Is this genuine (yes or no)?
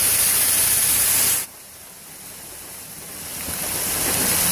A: yes